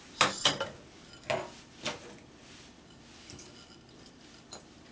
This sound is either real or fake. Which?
real